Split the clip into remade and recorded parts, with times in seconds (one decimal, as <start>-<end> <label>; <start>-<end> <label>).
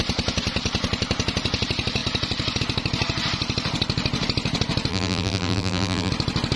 0.0-4.9 recorded; 4.9-6.1 remade; 6.1-6.6 recorded